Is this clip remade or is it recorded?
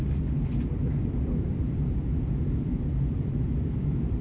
remade